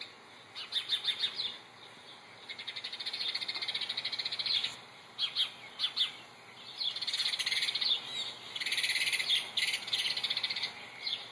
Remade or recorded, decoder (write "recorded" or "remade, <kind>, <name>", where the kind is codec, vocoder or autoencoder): recorded